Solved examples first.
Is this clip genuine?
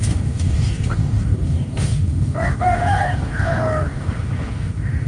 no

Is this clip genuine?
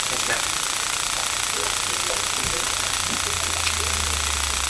yes